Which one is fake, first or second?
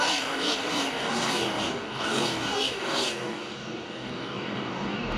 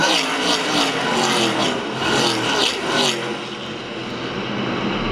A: first